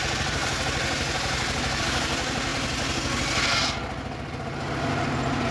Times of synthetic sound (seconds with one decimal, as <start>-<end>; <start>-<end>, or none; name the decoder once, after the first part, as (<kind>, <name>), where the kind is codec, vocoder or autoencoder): none

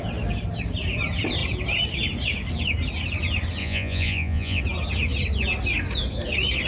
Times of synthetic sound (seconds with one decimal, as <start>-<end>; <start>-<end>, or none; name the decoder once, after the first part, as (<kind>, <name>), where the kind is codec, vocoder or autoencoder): 3.6-4.6 (vocoder, Vocos)